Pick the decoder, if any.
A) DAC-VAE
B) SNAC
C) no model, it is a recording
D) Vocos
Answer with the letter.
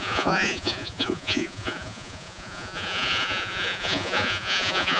D